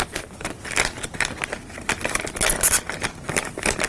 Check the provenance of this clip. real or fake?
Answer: real